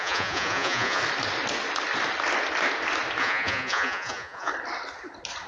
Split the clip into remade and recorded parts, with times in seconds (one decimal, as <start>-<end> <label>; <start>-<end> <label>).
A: 0.0-1.0 remade; 1.0-3.2 recorded; 3.2-4.5 remade; 4.5-5.5 recorded